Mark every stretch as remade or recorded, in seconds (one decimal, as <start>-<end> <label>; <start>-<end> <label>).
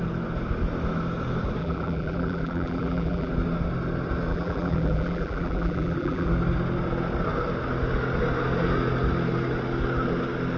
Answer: 0.0-1.6 recorded; 1.6-3.3 remade; 3.3-4.3 recorded; 4.3-6.3 remade; 6.3-10.6 recorded